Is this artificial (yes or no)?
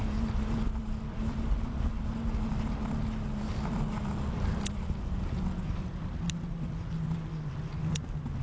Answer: no